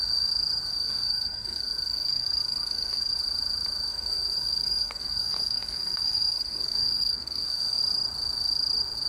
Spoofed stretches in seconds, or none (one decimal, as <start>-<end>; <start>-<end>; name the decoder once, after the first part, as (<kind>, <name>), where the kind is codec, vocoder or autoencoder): 0.7-3.2 (codec, SNAC); 3.9-7.8